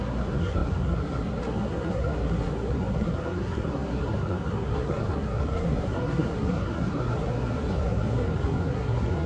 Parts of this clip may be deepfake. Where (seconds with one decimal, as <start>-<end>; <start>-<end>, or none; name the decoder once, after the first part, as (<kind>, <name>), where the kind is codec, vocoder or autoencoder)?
0.0-9.3 (codec, SNAC)